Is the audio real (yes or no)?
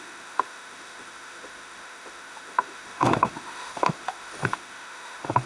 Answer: no